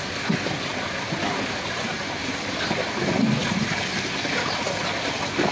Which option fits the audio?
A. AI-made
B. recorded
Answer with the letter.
B